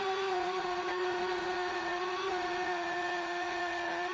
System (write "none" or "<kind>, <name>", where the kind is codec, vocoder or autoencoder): vocoder, Vocos